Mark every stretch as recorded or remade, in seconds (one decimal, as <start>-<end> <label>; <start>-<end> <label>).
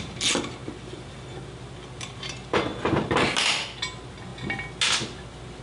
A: 0.0-5.6 recorded